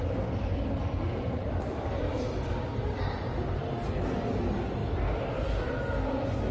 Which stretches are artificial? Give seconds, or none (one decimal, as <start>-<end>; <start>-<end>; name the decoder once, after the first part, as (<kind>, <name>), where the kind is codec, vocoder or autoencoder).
1.4-3.1 (vocoder, BigVGAN v2); 4.8-5.8